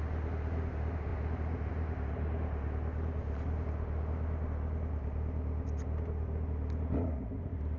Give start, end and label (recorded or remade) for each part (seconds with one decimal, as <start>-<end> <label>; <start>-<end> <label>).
0.0-7.8 recorded